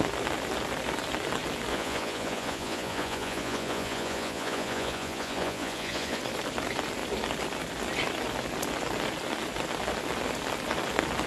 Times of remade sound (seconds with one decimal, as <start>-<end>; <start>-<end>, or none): 1.7-6.2